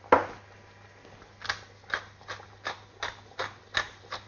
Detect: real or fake real